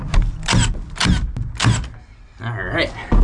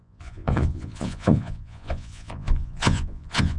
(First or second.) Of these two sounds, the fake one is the second